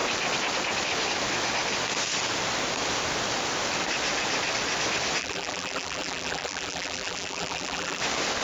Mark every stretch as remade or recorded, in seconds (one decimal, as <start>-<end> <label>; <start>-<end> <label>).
0.0-5.2 recorded; 5.2-8.0 remade; 8.0-8.4 recorded

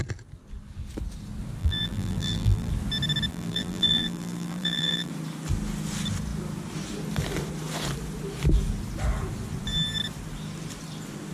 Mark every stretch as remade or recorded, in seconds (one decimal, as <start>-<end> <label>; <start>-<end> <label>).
0.0-1.6 recorded; 1.6-2.7 remade; 2.7-3.3 recorded; 3.3-5.1 remade; 5.1-11.3 recorded

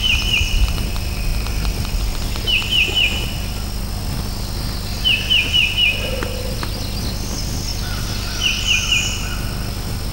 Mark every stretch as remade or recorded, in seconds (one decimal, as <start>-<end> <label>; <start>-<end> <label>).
0.0-10.1 recorded